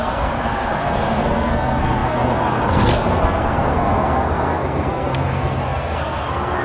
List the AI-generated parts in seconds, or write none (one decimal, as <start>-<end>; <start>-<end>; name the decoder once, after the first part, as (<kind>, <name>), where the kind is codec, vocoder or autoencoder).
0.0-6.6 (codec, SNAC)